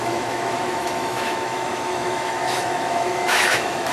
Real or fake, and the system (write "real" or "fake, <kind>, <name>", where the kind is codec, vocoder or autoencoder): fake, autoencoder, DAC-VAE